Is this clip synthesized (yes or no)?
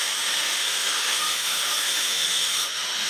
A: yes